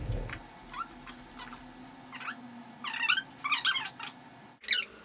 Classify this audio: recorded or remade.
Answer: recorded